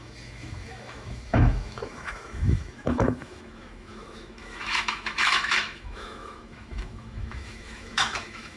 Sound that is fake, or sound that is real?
fake